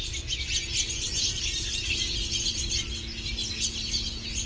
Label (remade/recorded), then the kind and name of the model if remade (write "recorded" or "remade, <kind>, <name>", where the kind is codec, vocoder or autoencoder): recorded